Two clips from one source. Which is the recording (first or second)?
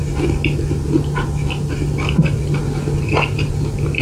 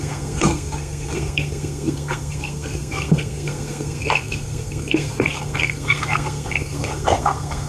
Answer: first